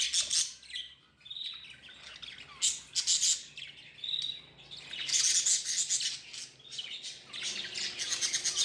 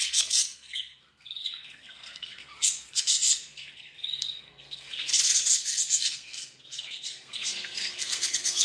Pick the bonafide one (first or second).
first